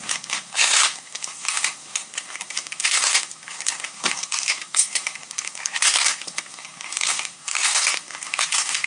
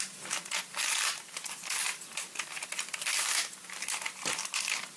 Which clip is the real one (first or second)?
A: second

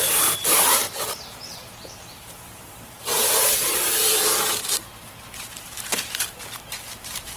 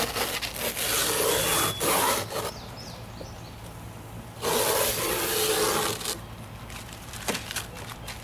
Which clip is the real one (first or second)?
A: second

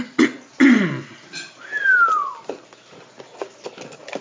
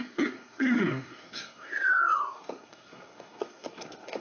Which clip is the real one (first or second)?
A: first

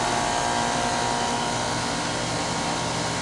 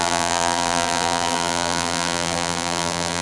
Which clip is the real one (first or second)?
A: first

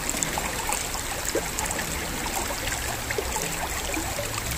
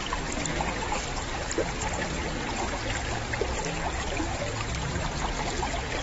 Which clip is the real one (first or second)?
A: second